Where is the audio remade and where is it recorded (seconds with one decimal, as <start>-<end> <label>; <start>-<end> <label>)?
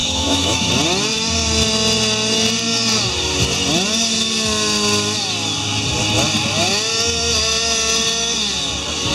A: 0.0-0.7 remade; 0.7-9.1 recorded